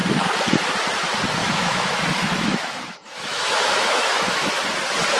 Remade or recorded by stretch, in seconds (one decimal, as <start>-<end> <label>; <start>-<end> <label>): 0.0-1.4 recorded; 1.4-4.5 remade; 4.5-5.2 recorded